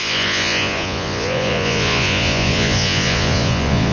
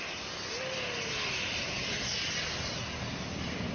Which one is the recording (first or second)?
second